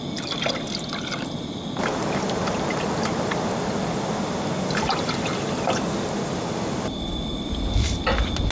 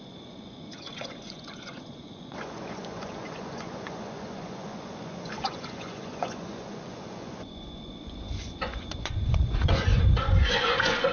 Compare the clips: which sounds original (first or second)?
first